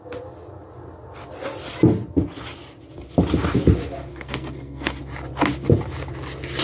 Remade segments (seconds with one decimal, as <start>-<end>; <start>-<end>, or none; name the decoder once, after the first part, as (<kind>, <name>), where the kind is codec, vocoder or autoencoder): 4.1-5.0 (codec, SNAC)